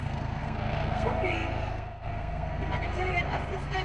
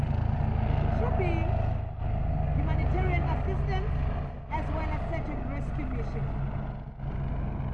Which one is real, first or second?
second